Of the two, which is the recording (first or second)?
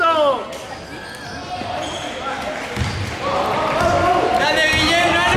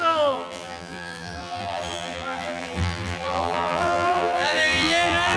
first